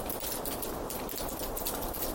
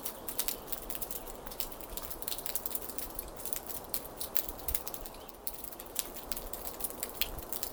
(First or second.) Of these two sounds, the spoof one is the first